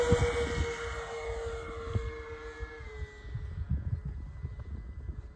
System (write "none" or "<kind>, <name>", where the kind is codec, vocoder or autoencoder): none